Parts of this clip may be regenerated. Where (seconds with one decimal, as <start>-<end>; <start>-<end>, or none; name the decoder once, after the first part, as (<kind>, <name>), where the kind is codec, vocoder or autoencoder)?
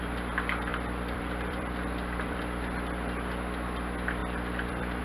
0.7-2.4 (vocoder, BigVGAN v2); 4.2-5.0